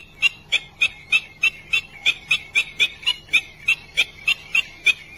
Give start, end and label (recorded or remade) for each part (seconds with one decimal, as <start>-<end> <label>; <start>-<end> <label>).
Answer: 0.0-3.1 remade; 3.1-3.9 recorded; 3.9-4.7 remade; 4.7-5.2 recorded